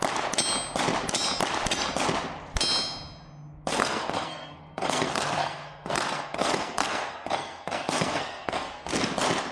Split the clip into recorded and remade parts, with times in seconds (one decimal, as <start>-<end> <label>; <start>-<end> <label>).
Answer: 0.0-3.7 recorded; 3.7-8.9 remade; 8.9-9.5 recorded